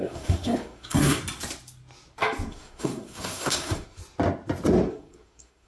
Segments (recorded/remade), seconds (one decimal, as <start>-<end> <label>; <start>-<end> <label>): 0.0-1.2 remade; 1.2-2.5 recorded; 2.5-4.0 remade; 4.0-4.9 recorded; 4.9-5.7 remade